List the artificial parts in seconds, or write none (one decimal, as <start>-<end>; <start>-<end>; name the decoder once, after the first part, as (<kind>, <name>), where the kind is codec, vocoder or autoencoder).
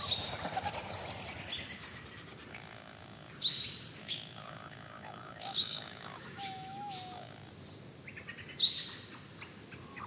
2.5-3.3 (autoencoder, DAC-VAE); 4.0-7.5